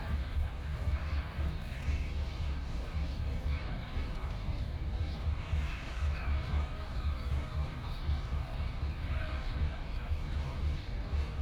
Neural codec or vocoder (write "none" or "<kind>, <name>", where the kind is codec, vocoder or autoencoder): codec, DAC